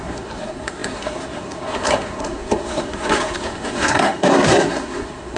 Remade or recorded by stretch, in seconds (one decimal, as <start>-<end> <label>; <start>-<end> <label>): 0.0-5.4 remade